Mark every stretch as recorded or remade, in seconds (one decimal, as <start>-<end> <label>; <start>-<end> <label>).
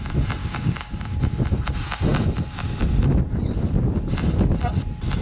0.0-0.4 recorded; 0.4-1.2 remade; 1.2-5.2 recorded